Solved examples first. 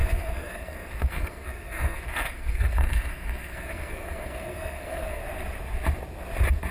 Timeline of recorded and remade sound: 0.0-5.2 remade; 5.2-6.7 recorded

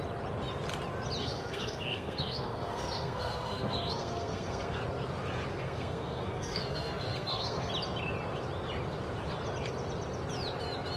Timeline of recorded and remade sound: 0.0-1.2 recorded; 1.2-4.8 remade; 4.8-5.5 recorded; 5.5-7.7 remade; 7.7-11.0 recorded

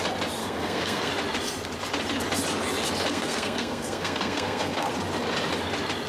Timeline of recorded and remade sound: 0.0-0.4 recorded; 0.4-1.1 remade; 1.1-3.1 recorded; 3.1-4.9 remade; 4.9-6.1 recorded

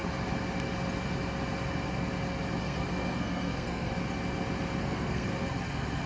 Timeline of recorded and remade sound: 0.0-2.6 recorded; 2.6-3.9 remade; 3.9-4.8 recorded; 4.8-5.3 remade; 5.3-6.1 recorded

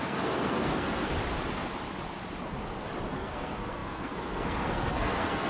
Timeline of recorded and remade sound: 0.0-1.1 remade; 1.1-3.1 recorded; 3.1-5.5 remade

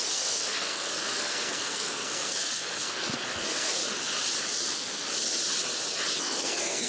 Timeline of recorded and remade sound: 0.0-3.8 remade; 3.8-6.2 recorded; 6.2-6.9 remade